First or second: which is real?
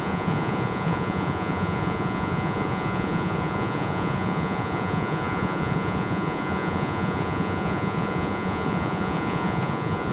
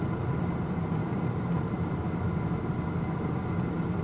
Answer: second